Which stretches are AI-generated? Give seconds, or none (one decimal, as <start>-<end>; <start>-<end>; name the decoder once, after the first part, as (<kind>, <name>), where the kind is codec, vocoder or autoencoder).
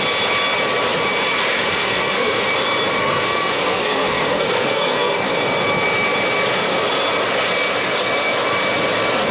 1.7-2.4 (codec, SNAC); 3.0-5.3